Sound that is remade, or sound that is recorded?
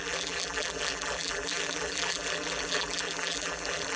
remade